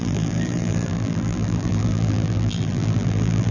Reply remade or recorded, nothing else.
remade